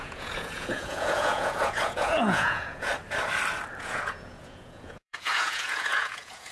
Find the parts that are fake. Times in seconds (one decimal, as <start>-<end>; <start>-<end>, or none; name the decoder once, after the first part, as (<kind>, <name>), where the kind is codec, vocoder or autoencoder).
0.0-2.9 (vocoder, Vocos); 3.8-6.5